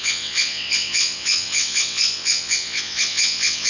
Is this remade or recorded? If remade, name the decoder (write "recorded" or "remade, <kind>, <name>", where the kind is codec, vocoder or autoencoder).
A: remade, vocoder, WaveNeXt